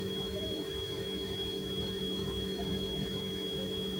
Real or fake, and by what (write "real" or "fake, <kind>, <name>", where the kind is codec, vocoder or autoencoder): fake, autoencoder, DAC-VAE